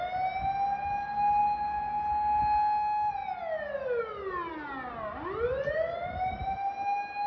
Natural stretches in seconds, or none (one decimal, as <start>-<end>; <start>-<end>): 0.0-7.3